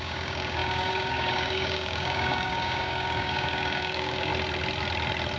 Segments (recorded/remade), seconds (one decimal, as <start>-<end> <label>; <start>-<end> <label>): 0.0-4.3 remade; 4.3-5.4 recorded